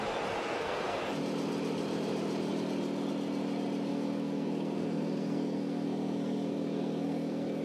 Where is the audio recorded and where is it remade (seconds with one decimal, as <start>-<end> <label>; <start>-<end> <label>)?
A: 0.0-0.4 recorded; 0.4-1.0 remade; 1.0-3.9 recorded; 3.9-7.6 remade